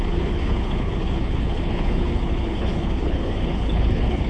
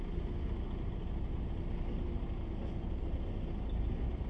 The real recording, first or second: second